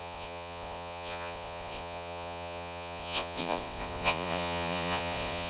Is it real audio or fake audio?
fake